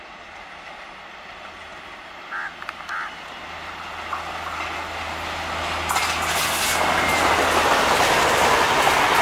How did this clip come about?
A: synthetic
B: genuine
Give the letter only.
B